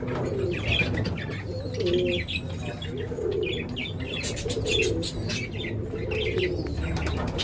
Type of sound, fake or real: real